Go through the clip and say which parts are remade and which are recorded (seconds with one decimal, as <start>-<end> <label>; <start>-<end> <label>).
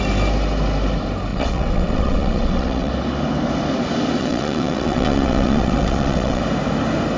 0.0-1.3 recorded; 1.3-2.9 remade; 2.9-4.2 recorded; 4.2-6.4 remade; 6.4-7.2 recorded